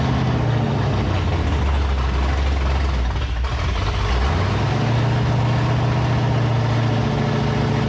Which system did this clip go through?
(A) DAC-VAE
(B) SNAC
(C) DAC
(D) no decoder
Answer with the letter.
D